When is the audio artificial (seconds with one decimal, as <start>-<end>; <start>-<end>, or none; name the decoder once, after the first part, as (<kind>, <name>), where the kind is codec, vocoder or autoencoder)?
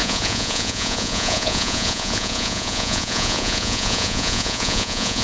0.0-5.2 (vocoder, Vocos)